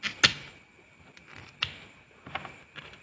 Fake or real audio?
real